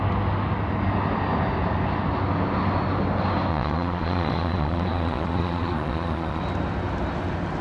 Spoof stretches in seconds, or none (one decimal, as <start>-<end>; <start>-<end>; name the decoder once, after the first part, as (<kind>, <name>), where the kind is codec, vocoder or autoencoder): 3.5-6.4 (vocoder, Vocos)